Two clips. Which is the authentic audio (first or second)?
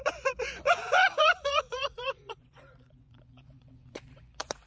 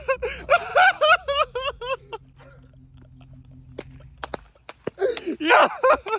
second